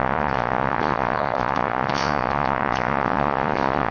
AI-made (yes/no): yes